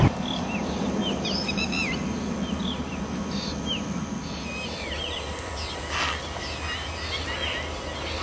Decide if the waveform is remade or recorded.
recorded